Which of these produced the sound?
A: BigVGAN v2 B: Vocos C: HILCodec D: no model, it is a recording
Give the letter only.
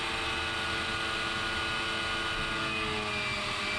D